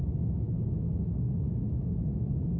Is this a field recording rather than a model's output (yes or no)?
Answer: no